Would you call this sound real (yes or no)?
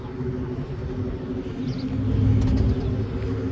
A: yes